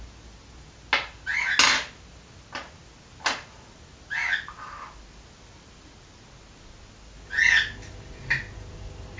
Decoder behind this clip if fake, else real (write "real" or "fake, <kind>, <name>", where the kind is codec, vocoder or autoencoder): real